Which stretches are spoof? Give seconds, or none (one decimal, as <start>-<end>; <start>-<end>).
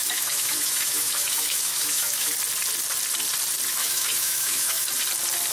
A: 0.0-2.3; 3.8-4.9